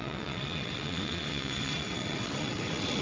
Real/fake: fake